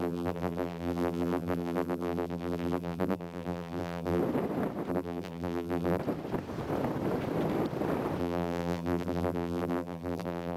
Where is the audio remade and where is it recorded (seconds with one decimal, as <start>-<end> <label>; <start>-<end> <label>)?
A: 0.0-4.2 remade; 4.2-4.9 recorded; 4.9-6.0 remade; 6.0-8.2 recorded; 8.2-10.6 remade

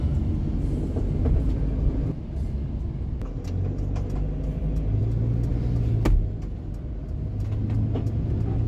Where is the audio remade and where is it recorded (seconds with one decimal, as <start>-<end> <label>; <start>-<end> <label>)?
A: 0.0-8.7 recorded

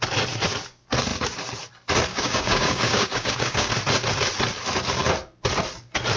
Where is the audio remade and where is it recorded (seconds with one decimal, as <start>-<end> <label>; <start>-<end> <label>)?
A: 0.0-2.1 recorded; 2.1-3.7 remade; 3.7-6.2 recorded

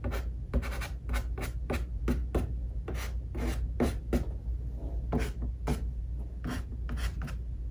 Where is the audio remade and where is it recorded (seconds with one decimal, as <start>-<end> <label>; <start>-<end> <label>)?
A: 0.0-7.7 recorded

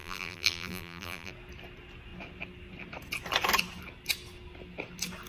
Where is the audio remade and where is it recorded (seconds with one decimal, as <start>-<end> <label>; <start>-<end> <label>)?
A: 0.0-1.3 remade; 1.3-5.3 recorded

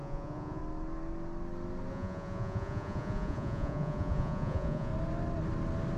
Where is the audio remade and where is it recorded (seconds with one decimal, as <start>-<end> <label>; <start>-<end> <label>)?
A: 0.0-0.6 remade; 0.6-1.9 recorded; 1.9-4.9 remade; 4.9-6.0 recorded

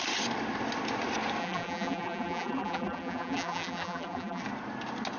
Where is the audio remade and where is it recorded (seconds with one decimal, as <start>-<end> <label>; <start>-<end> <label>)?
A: 0.0-1.4 recorded; 1.4-4.4 remade; 4.4-5.2 recorded

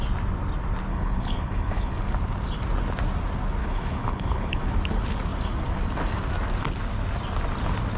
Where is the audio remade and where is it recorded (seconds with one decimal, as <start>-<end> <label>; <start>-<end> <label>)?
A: 0.0-0.9 recorded; 0.9-2.0 remade; 2.0-3.6 recorded; 3.6-4.6 remade; 4.6-8.0 recorded